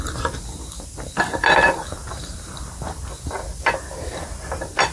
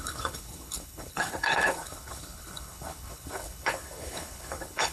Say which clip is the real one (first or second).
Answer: first